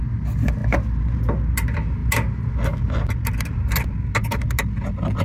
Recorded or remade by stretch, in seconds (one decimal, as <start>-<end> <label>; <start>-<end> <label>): 0.0-5.2 recorded